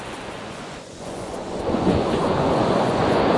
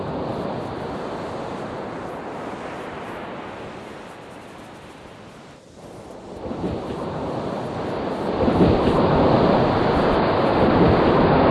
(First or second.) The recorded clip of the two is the second